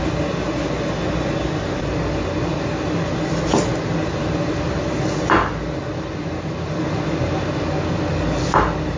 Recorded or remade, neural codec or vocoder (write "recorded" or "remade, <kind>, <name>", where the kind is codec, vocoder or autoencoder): recorded